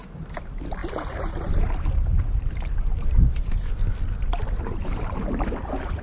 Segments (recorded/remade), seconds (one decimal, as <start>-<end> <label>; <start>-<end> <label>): 0.0-3.8 remade; 3.8-4.6 recorded; 4.6-6.0 remade